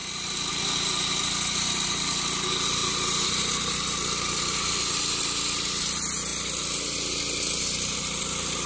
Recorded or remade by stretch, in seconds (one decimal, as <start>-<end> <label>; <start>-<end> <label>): 0.0-2.8 recorded; 2.8-3.4 remade; 3.4-8.7 recorded